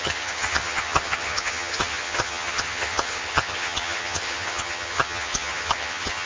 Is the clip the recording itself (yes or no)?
no